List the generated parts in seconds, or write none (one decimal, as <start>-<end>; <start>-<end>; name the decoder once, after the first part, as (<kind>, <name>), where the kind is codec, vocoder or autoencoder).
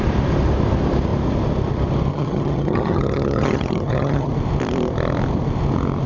2.1-4.3 (vocoder, HiFi-GAN)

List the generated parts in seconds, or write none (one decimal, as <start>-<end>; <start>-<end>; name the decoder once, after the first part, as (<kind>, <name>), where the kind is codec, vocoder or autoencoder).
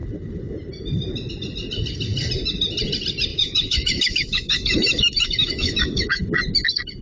3.3-6.2 (autoencoder, DAC-VAE)